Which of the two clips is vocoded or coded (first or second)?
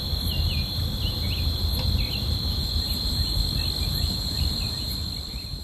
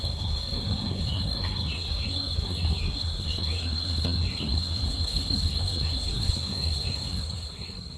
second